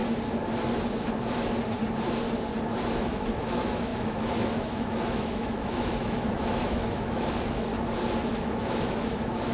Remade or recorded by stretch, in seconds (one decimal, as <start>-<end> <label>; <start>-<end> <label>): 0.0-3.0 recorded; 3.0-7.7 remade; 7.7-8.3 recorded; 8.3-9.5 remade